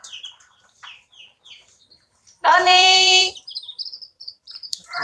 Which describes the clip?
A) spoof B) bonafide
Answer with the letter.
A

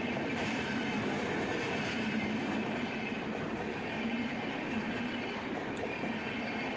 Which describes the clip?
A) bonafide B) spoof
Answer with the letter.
B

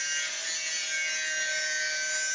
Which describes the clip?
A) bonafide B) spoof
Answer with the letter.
A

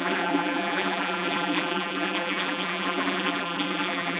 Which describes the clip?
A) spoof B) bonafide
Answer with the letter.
A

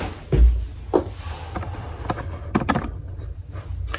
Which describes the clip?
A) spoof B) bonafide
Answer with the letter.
B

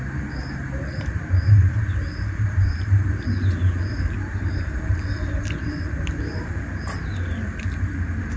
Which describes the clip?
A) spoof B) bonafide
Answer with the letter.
A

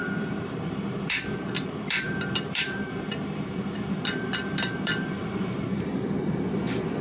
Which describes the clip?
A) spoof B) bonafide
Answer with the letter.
A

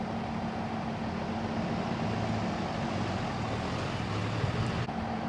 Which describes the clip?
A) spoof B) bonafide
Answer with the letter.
B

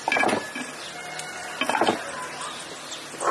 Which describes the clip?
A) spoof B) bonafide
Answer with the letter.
B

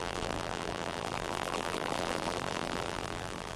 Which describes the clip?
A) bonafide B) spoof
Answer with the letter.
B